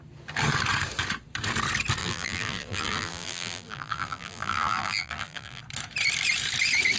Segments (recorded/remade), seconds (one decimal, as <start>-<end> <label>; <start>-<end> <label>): 0.0-2.0 recorded; 2.0-5.6 remade; 5.6-7.0 recorded